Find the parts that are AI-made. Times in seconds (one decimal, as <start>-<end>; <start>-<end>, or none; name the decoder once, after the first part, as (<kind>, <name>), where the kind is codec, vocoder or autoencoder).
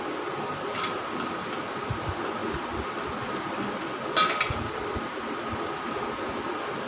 none